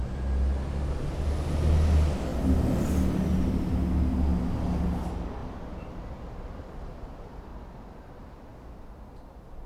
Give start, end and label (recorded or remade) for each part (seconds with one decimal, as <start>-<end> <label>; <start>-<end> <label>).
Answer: 0.0-5.4 recorded; 5.4-6.0 remade; 6.0-7.5 recorded; 7.5-8.1 remade; 8.1-9.7 recorded